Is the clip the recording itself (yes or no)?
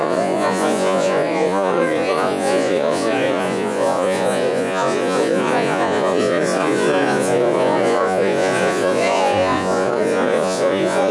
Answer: no